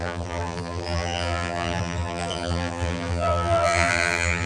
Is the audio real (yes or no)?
no